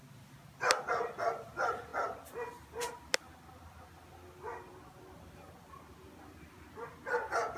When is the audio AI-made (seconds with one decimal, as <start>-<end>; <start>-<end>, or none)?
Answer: 4.5-5.2